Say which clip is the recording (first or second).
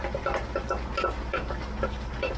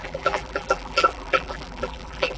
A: first